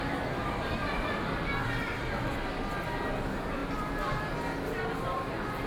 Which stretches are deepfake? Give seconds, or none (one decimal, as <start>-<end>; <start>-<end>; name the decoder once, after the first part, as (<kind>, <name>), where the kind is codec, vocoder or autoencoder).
0.4-2.1 (vocoder, BigVGAN v2); 3.6-4.2